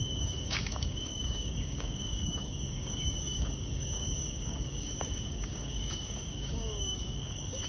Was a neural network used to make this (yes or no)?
yes